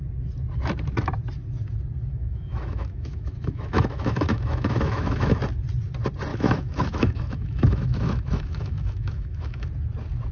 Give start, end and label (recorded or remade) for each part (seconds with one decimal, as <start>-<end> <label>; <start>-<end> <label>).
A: 0.0-2.1 recorded; 2.1-5.4 remade; 5.4-6.3 recorded; 6.3-9.7 remade; 9.7-10.3 recorded